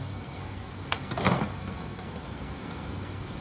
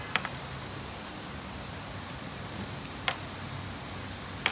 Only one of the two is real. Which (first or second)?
second